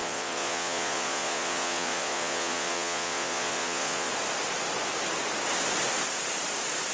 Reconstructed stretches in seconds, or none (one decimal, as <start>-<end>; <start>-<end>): 0.0-4.1